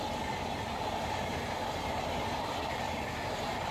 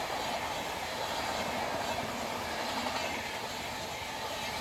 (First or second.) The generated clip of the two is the first